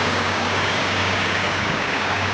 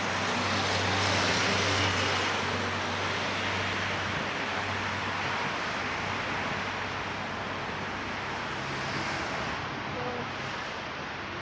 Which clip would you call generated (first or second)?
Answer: first